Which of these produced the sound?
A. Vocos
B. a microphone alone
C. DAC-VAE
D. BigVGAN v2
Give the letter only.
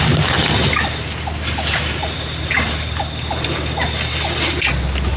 B